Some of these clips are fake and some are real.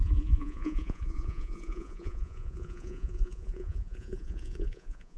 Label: fake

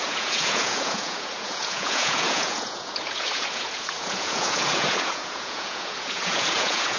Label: fake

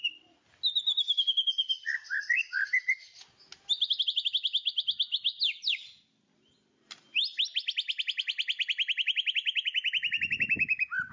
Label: real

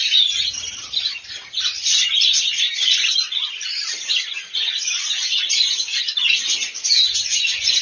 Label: real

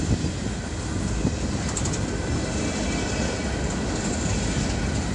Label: real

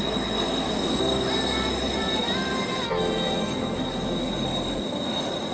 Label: real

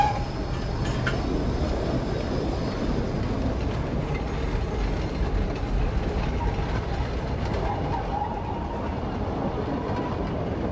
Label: real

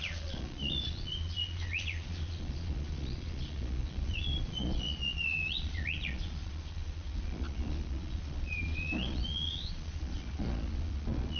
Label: fake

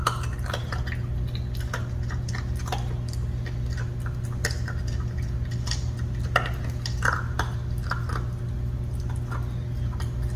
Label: real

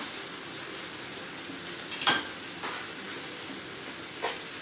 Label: real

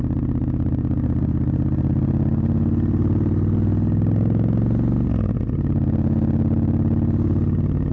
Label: real